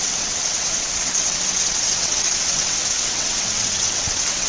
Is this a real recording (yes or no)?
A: no